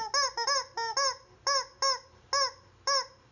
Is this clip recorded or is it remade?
recorded